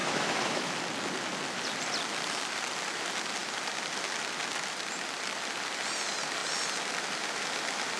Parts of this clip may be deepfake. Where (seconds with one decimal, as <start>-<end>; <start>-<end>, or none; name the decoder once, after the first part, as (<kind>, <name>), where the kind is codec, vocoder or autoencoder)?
0.0-0.7 (autoencoder, DAC-VAE)